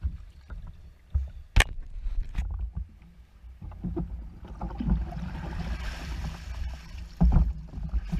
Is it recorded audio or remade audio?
recorded